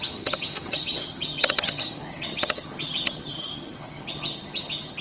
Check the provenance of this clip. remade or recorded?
remade